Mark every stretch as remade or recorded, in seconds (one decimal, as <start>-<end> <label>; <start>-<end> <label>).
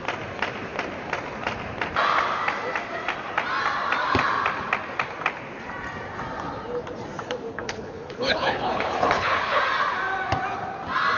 0.0-7.5 recorded; 7.5-9.6 remade; 9.6-11.2 recorded